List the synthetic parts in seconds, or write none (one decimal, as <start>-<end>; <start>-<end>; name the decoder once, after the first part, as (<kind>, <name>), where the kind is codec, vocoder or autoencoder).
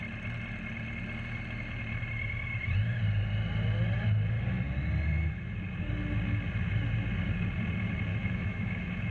8.1-9.1 (autoencoder, DAC-VAE)